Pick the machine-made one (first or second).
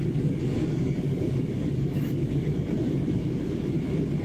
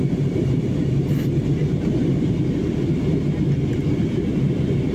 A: first